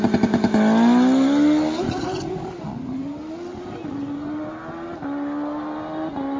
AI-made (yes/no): no